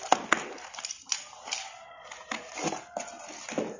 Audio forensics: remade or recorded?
recorded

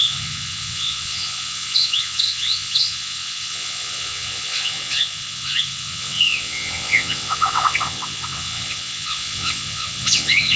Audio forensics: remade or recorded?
remade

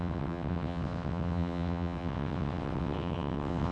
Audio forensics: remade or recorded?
remade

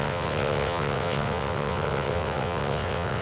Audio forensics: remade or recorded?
remade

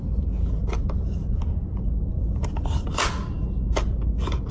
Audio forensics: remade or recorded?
recorded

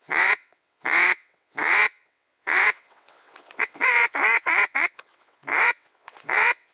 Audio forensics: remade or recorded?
remade